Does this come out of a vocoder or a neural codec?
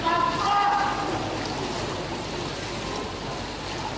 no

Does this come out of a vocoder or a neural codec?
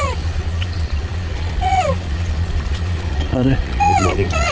yes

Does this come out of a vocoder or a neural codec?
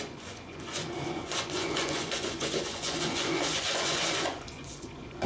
yes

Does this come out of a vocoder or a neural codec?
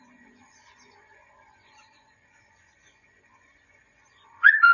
yes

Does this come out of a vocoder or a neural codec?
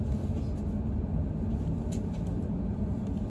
no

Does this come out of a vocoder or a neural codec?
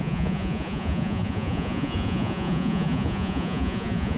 yes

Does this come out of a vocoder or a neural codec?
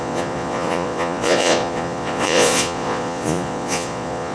yes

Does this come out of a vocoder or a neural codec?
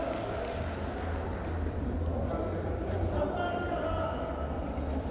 no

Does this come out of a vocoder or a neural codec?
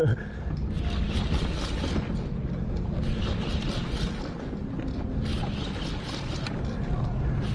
no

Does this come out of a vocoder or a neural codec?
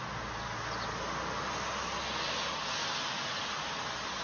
no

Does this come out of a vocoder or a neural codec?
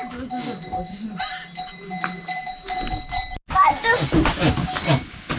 no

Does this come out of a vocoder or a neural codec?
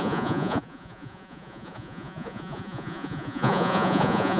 yes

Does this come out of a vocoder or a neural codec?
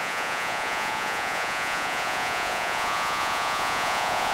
yes